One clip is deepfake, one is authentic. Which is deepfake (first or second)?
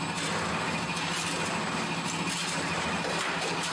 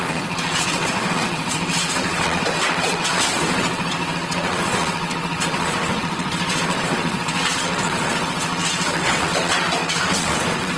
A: second